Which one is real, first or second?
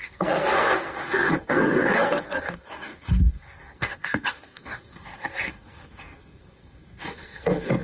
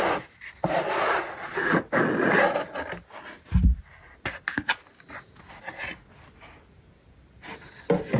second